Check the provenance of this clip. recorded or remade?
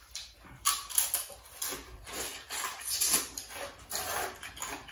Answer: recorded